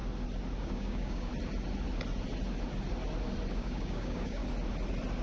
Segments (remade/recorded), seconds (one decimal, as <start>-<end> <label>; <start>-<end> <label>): 0.0-0.6 recorded; 0.6-1.3 remade; 1.3-3.5 recorded; 3.5-4.4 remade; 4.4-5.2 recorded